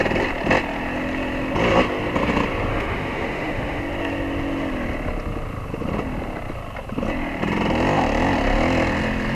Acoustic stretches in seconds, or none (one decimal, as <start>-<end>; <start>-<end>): 0.0-2.7; 3.8-9.3